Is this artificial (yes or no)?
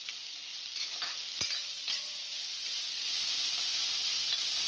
yes